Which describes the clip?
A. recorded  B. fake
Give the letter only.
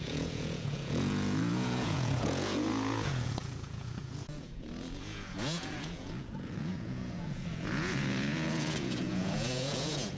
B